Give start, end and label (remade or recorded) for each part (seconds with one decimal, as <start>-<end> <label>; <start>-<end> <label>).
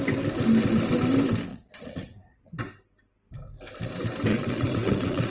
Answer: 0.0-1.5 recorded; 1.5-2.6 remade; 2.6-4.3 recorded; 4.3-5.3 remade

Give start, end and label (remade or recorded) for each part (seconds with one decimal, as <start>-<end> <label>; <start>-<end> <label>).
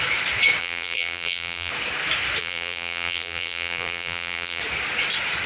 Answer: 0.0-0.6 recorded; 0.6-1.7 remade; 1.7-2.4 recorded; 2.4-4.6 remade; 4.6-5.5 recorded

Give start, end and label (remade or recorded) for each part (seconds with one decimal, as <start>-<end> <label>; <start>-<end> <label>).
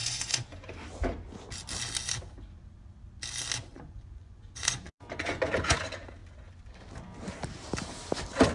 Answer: 0.0-0.7 remade; 0.7-3.7 recorded; 3.7-5.8 remade; 5.8-8.5 recorded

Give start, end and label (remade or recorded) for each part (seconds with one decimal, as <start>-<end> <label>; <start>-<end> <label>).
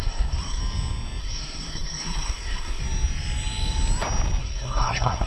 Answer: 0.0-0.6 remade; 0.6-1.2 recorded; 1.2-2.8 remade; 2.8-4.4 recorded; 4.4-5.3 remade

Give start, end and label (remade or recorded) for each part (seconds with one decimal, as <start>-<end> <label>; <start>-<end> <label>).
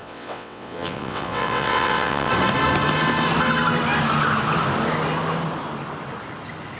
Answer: 0.0-2.3 remade; 2.3-6.8 recorded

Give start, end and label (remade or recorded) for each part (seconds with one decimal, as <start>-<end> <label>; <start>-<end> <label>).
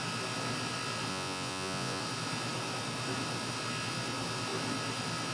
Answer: 0.0-1.1 recorded; 1.1-2.0 remade; 2.0-5.3 recorded